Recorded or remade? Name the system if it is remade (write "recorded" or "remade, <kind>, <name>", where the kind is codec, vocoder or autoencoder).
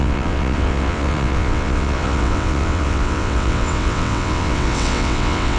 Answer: remade, vocoder, WaveNeXt